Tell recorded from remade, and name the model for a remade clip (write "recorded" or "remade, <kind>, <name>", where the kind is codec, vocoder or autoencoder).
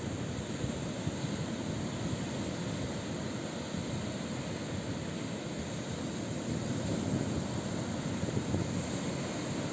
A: recorded